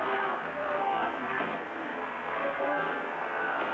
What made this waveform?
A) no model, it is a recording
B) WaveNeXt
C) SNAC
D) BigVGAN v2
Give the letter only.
C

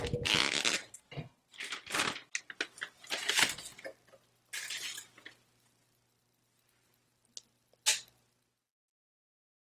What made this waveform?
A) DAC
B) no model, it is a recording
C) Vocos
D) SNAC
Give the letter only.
B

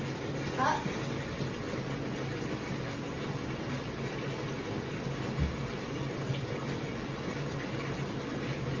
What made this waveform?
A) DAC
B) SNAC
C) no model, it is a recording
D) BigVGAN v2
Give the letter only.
C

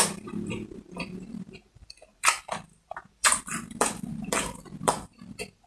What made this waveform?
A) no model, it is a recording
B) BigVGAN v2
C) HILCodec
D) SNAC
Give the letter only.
B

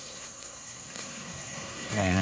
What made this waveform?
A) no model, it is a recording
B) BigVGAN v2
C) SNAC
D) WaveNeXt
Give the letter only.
C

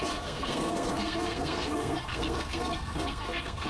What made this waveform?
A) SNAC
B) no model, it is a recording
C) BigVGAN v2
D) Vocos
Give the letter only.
A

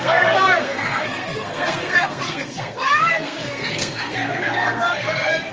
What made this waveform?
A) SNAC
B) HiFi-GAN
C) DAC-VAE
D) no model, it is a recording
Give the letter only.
A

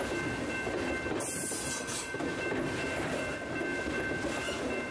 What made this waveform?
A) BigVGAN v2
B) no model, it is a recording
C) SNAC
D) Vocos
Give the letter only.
B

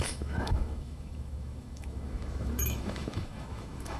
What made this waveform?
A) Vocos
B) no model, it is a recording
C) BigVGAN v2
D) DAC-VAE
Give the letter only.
D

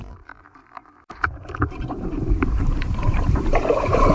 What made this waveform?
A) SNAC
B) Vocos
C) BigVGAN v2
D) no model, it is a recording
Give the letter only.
C